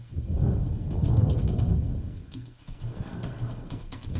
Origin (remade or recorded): remade